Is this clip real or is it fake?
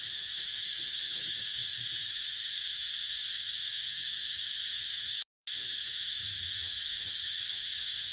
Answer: fake